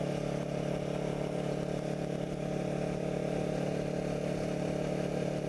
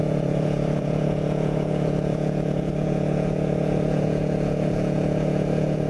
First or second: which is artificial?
second